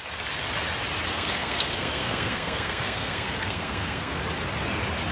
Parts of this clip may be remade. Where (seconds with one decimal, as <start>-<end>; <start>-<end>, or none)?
1.1-4.2